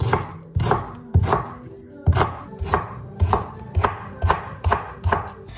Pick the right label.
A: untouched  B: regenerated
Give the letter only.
A